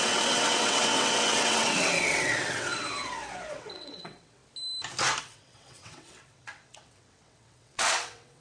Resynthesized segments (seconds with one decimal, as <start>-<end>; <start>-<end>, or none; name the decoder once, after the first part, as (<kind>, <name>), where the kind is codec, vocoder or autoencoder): 0.0-2.7 (vocoder, WaveNeXt); 3.5-4.4; 5.2-8.4